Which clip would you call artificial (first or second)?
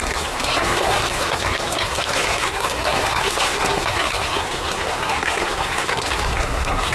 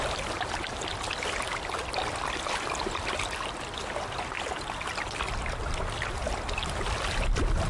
first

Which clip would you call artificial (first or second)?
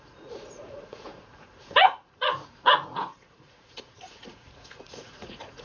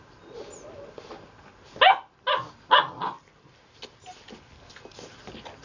first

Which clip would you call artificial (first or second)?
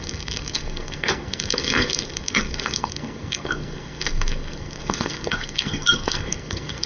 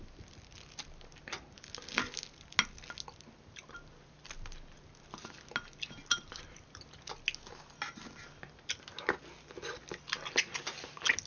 first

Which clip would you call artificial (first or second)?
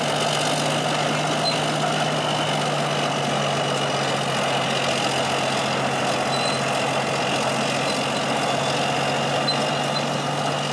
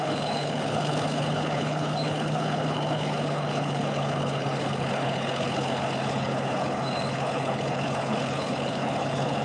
second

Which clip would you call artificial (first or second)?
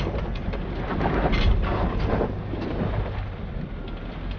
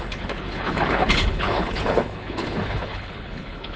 second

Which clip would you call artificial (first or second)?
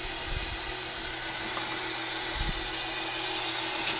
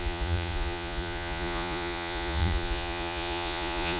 second